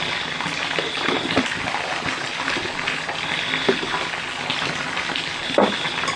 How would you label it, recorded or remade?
recorded